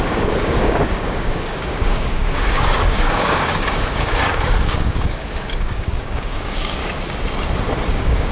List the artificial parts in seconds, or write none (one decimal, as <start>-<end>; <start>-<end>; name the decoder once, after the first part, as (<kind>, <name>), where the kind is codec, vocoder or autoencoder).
0.0-6.8 (codec, DAC); 7.9-8.3

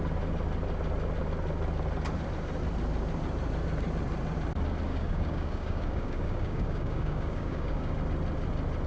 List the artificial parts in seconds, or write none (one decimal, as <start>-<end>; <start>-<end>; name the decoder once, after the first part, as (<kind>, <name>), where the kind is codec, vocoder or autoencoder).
4.9-8.0 (codec, DAC)

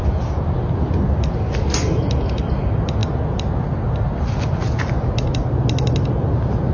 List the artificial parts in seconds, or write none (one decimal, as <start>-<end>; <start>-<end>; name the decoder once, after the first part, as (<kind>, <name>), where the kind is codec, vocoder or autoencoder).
none

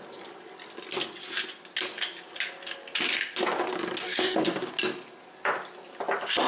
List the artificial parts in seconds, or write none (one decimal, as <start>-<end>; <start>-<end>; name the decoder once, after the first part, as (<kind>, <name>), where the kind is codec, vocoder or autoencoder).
4.0-4.7 (codec, DAC)

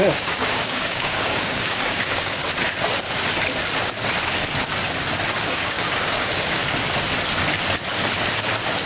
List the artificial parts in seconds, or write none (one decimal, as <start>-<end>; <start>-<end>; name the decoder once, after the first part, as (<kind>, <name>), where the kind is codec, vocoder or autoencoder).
0.0-2.4 (codec, DAC); 5.4-6.6